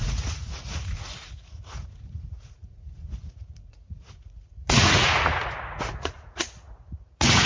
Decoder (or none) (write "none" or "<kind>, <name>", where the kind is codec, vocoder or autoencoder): vocoder, Vocos